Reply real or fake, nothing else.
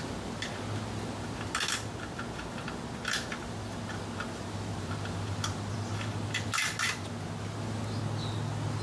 real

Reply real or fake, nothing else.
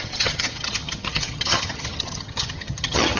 fake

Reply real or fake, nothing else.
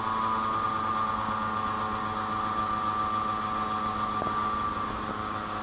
real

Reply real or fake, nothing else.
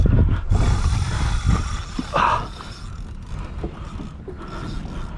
real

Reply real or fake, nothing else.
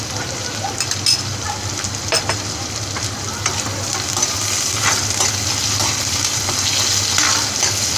real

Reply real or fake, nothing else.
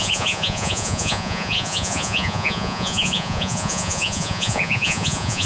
fake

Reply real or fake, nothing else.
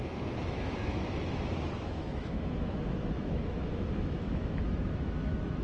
fake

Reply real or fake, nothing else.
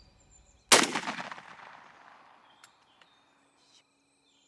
real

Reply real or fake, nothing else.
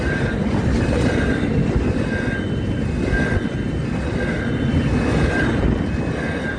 real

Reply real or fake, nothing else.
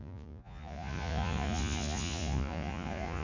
fake